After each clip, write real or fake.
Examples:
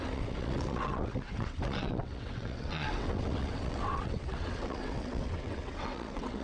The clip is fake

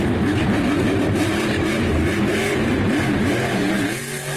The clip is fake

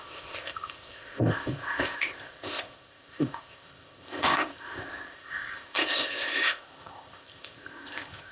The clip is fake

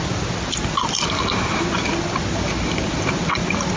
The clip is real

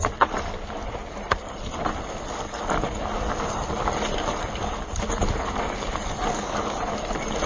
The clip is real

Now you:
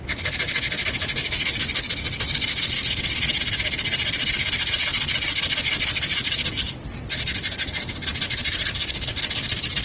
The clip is real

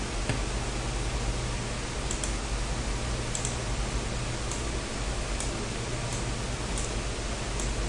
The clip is real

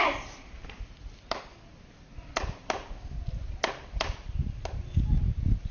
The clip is real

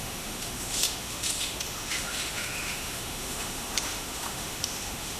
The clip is fake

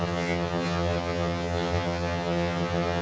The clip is fake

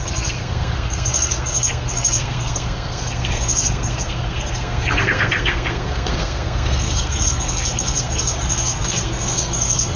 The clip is fake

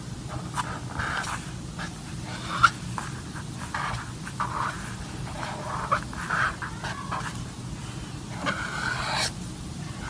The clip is real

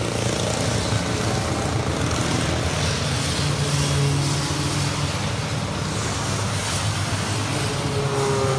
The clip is real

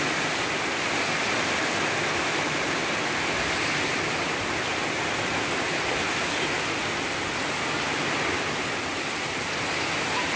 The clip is real